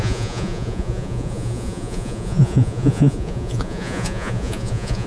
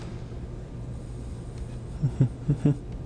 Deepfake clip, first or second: first